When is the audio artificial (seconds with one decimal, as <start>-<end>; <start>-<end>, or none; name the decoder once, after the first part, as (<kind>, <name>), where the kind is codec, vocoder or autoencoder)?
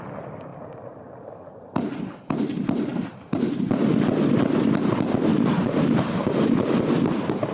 0.5-1.8 (vocoder, BigVGAN v2); 2.9-3.7; 5.3-6.8